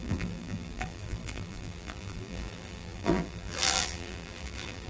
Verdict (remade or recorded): remade